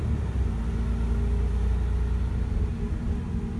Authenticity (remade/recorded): recorded